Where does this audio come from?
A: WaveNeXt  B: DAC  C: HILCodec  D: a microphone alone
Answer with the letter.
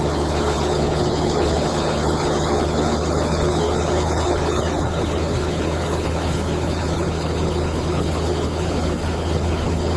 C